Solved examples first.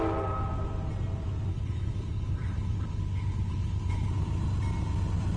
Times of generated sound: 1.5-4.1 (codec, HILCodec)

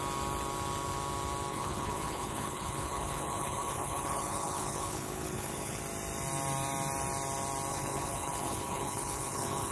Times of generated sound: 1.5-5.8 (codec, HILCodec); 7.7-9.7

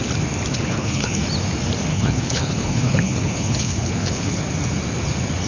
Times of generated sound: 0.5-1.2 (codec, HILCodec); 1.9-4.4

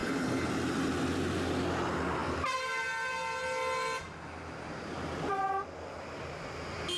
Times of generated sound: 0.0-0.5 (codec, HILCodec)

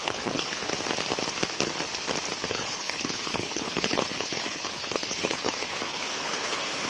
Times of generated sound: 0.0-0.7 (codec, HILCodec); 2.5-6.9

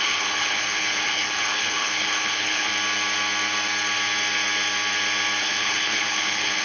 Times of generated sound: 0.0-2.7 (codec, HILCodec); 5.4-6.6

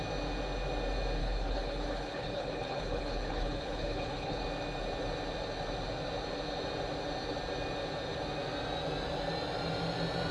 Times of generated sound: 1.2-4.4 (codec, HILCodec)

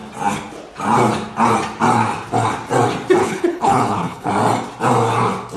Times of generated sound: 3.2-4.3 (codec, HILCodec)